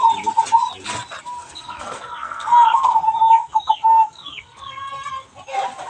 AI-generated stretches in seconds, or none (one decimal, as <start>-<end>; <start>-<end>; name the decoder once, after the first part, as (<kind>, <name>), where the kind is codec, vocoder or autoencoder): 1.4-4.9 (codec, SNAC)